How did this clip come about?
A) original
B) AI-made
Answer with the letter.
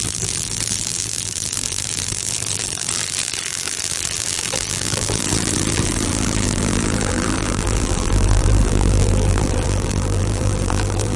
B